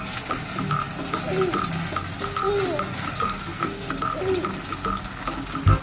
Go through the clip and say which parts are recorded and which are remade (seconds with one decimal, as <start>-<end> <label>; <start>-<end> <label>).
0.0-2.9 recorded; 2.9-4.0 remade; 4.0-5.8 recorded